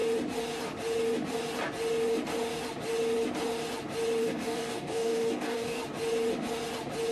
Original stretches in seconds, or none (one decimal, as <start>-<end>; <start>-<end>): 0.0-4.2; 5.8-7.1